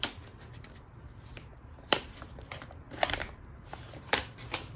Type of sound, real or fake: fake